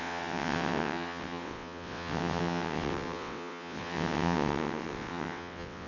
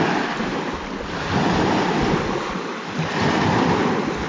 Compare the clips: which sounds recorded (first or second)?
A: second